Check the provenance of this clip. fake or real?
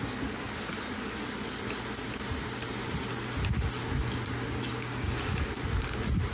real